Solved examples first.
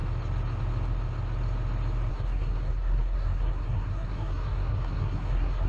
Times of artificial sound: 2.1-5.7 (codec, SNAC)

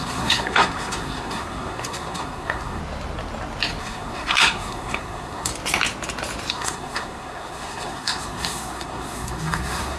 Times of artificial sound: 0.0-2.8 (codec, SNAC); 3.8-5.5; 6.5-10.0

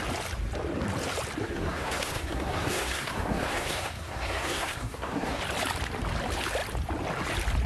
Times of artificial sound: 1.4-5.4 (codec, SNAC)

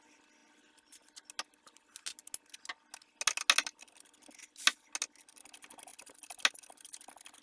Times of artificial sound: none